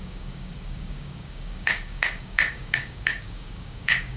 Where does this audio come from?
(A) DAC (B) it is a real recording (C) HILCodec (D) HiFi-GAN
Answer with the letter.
A